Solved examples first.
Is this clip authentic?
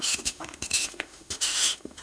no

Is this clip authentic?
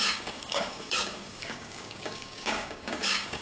no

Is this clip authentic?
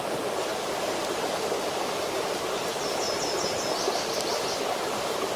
yes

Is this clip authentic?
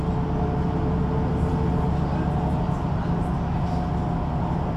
yes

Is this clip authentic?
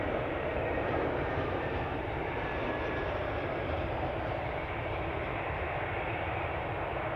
no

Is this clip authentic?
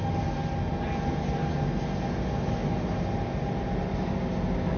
yes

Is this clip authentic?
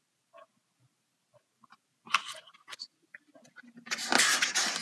yes